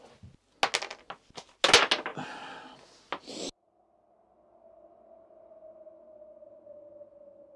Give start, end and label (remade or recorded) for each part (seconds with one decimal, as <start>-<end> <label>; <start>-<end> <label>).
0.0-7.6 recorded